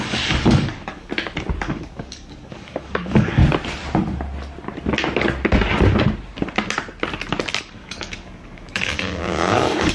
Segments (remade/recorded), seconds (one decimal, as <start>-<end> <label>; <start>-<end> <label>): 0.0-1.1 remade; 1.1-1.7 recorded; 1.7-3.4 remade; 3.4-7.6 recorded; 7.6-9.9 remade